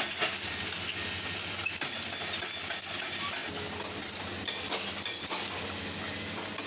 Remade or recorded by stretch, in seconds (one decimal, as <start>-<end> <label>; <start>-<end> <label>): 0.0-6.7 recorded